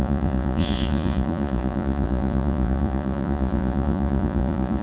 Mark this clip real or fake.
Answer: fake